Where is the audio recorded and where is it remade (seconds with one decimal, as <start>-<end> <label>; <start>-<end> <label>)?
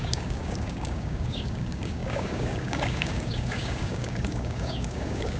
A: 0.0-5.4 remade